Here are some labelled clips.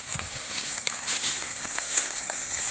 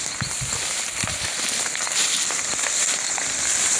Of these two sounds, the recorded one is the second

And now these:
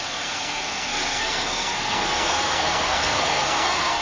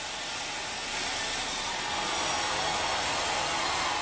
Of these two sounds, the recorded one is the second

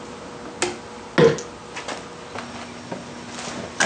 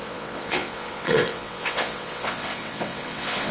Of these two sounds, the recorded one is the first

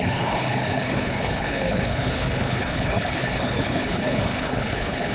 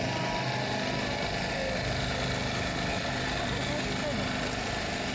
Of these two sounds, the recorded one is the second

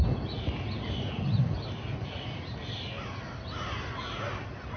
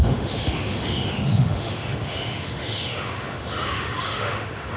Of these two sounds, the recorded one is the first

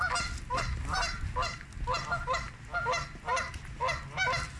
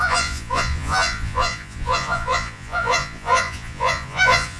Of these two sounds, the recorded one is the first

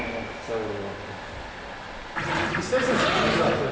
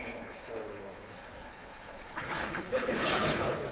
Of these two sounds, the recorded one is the first